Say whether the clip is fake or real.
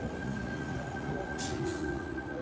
fake